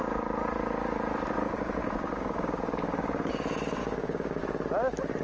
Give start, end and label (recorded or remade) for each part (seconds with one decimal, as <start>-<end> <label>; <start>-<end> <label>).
0.0-1.8 recorded; 1.8-3.3 remade; 3.3-3.8 recorded; 3.8-4.4 remade; 4.4-5.2 recorded